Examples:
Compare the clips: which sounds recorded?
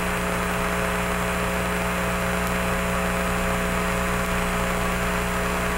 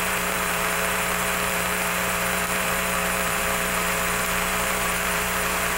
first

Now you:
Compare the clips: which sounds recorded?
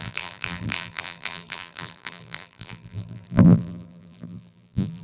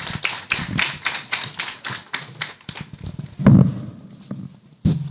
second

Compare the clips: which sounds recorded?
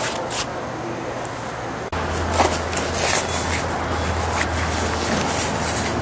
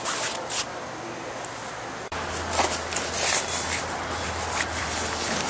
first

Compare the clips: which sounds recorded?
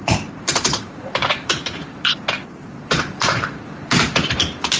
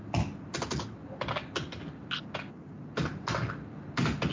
second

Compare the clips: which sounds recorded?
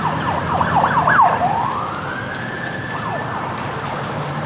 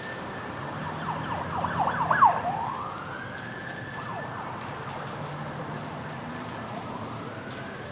second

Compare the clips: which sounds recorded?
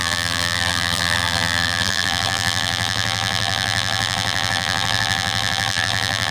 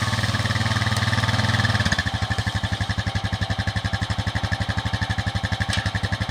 second